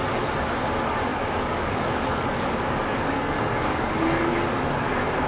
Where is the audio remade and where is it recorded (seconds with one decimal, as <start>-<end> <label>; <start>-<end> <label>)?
0.0-1.1 recorded; 1.1-4.3 remade; 4.3-5.3 recorded